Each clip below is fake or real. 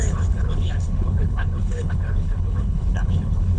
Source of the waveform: fake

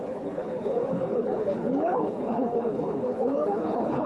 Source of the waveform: fake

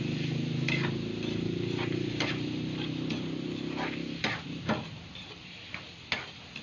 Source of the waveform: real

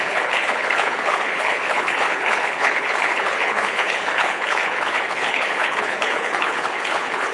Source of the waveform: fake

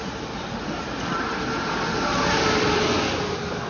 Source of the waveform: real